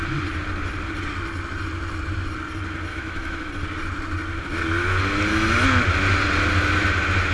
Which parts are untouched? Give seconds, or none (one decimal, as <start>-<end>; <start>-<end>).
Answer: 0.0-2.9; 3.5-7.3